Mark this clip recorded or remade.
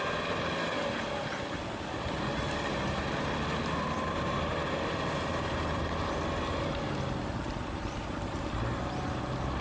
recorded